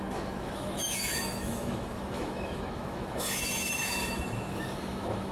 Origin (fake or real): fake